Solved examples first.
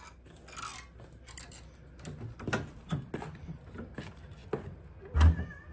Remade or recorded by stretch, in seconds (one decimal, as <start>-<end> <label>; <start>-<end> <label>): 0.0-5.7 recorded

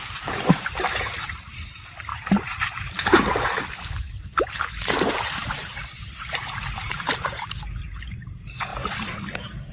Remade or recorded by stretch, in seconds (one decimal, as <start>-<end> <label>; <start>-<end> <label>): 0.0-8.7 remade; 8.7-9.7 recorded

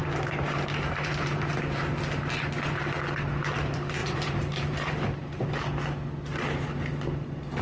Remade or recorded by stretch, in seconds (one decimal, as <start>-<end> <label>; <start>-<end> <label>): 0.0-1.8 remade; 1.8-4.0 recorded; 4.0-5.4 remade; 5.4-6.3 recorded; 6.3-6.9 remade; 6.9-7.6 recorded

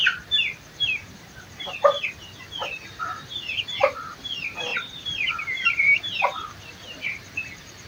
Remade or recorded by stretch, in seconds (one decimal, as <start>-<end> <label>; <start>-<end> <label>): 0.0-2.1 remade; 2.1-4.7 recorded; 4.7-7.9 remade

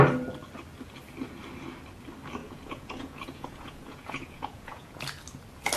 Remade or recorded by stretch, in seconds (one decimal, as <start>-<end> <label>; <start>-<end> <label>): 0.0-2.4 recorded; 2.4-5.0 remade; 5.0-5.8 recorded

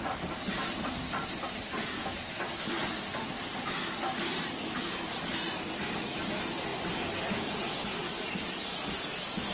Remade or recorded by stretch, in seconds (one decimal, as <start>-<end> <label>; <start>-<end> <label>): 0.0-9.5 recorded